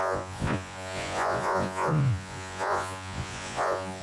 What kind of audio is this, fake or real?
fake